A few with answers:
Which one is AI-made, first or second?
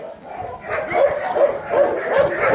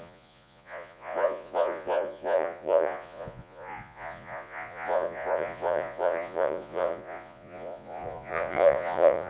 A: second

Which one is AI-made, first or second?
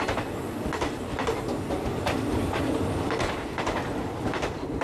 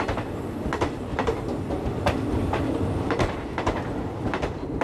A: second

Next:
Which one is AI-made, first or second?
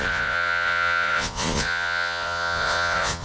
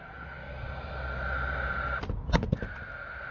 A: first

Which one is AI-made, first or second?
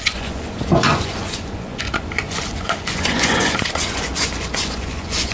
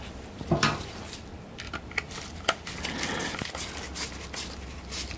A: first